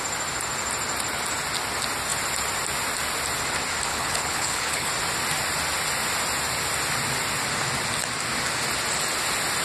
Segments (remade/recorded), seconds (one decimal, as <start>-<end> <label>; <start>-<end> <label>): 0.0-3.9 recorded; 3.9-4.9 remade; 4.9-9.6 recorded